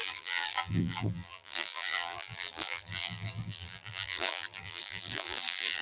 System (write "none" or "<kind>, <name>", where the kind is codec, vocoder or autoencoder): vocoder, BigVGAN v2